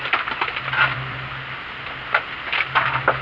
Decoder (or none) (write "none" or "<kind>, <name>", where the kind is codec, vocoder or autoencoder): none